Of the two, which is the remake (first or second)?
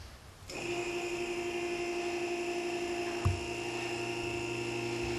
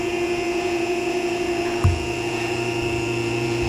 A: second